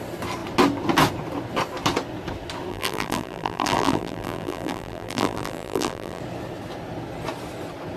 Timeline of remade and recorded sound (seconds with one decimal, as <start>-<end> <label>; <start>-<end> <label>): 0.0-2.7 recorded; 2.7-6.2 remade; 6.2-8.0 recorded